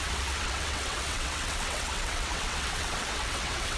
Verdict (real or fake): fake